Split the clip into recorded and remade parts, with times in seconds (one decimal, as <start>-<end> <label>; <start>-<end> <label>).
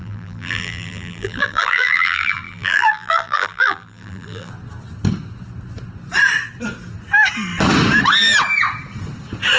0.0-4.5 remade; 4.5-9.6 recorded